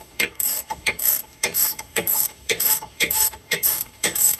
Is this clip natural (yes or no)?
no